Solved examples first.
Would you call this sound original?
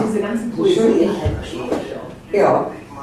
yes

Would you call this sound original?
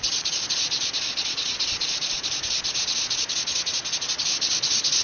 no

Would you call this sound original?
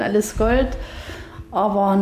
yes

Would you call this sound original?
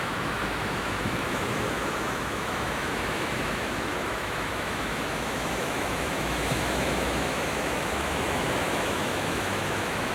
no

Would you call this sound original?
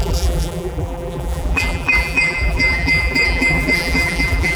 no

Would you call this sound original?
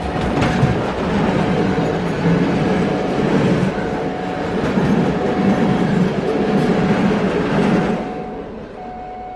yes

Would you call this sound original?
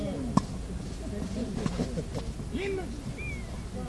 yes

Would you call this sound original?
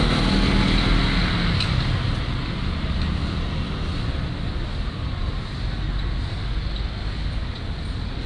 yes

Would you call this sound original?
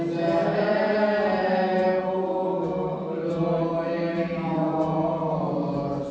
yes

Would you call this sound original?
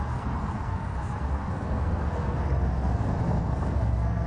no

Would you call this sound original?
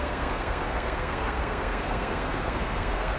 no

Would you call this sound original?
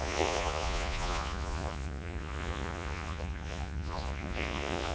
no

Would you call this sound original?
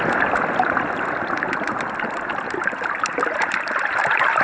yes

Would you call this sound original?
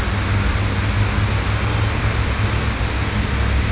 yes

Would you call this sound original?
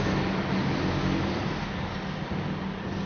yes